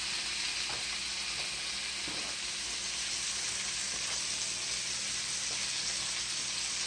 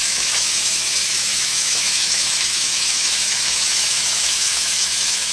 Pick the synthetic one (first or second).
second